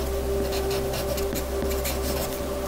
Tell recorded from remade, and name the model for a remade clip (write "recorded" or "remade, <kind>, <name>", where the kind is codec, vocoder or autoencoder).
recorded